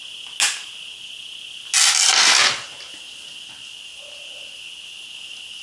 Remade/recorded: recorded